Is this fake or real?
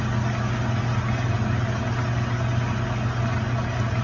real